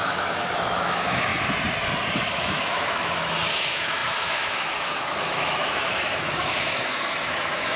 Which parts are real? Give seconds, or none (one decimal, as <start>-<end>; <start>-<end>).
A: 1.3-2.1